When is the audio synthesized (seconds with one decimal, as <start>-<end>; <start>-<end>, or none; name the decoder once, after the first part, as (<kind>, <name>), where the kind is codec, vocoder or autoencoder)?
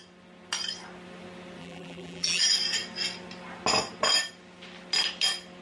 1.6-2.4 (vocoder, BigVGAN v2)